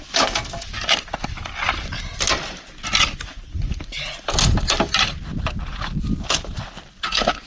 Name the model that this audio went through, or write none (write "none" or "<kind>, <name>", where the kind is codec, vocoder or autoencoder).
none